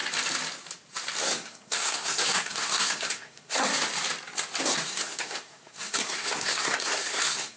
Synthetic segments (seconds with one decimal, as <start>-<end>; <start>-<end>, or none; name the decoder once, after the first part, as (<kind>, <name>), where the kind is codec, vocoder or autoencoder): 1.2-3.7 (codec, SNAC); 4.6-7.6